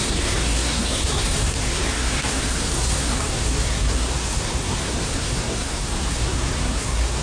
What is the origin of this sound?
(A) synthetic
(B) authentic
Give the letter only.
A